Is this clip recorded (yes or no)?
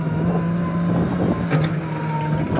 yes